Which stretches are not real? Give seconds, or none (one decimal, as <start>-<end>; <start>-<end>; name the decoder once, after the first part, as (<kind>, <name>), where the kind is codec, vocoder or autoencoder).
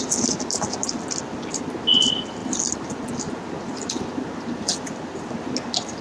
none